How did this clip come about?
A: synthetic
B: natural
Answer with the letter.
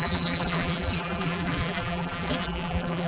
A